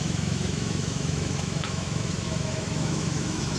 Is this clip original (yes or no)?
no